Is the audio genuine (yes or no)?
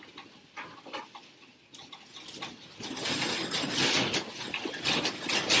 yes